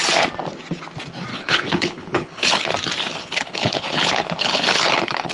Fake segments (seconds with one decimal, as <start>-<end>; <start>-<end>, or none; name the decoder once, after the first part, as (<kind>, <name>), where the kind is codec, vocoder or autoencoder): 1.3-2.7 (codec, HILCodec); 3.1-5.3